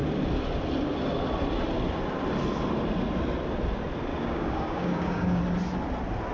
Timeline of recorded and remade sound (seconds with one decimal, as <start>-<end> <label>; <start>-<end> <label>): 0.0-4.1 recorded; 4.1-5.4 remade; 5.4-6.3 recorded